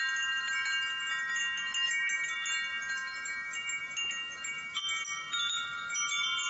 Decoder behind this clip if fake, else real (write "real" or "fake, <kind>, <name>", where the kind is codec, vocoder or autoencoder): real